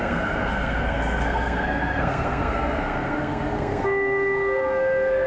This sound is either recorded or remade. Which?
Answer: remade